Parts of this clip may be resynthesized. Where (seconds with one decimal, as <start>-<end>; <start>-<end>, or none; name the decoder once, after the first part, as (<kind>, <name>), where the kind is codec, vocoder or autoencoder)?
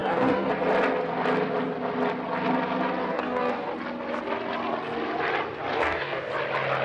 0.0-0.5 (codec, DAC); 3.0-3.7; 5.7-6.3